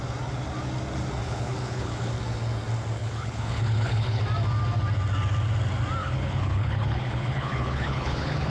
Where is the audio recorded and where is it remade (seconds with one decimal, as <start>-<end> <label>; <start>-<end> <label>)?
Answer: 0.0-1.2 recorded; 1.2-2.1 remade; 2.1-3.0 recorded; 3.0-4.2 remade; 4.2-6.0 recorded; 6.0-8.5 remade